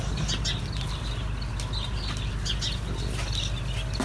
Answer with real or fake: real